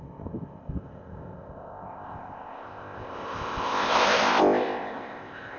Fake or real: fake